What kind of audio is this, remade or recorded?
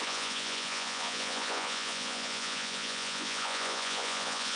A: remade